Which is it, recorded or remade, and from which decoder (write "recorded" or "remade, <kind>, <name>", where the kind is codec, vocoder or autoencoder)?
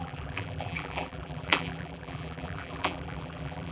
remade, vocoder, BigVGAN v2